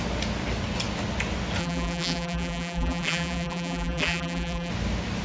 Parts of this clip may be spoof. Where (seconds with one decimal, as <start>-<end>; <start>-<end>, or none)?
1.6-4.7